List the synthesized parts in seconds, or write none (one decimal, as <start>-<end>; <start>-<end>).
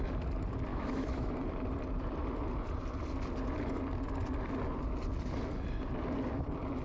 0.7-1.3